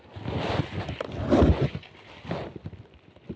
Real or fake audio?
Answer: real